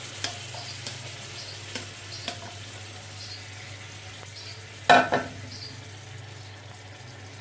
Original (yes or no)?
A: yes